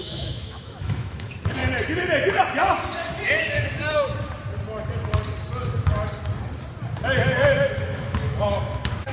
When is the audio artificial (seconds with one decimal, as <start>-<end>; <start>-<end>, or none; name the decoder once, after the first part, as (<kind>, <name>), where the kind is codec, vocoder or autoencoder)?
0.0-1.6 (autoencoder, DAC-VAE); 3.5-4.1; 7.2-9.1